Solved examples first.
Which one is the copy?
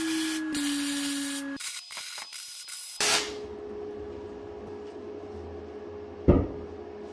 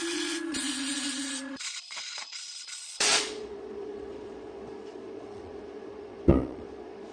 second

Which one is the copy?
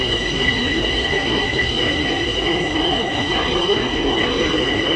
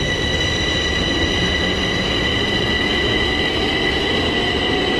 first